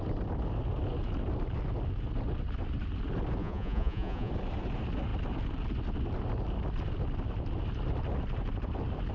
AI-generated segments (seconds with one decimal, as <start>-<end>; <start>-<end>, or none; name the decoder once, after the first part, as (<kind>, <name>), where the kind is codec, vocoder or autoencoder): 3.4-4.3 (vocoder, Vocos)